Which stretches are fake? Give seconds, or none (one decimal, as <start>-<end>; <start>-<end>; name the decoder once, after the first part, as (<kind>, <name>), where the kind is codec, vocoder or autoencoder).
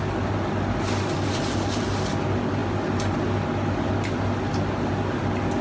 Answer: none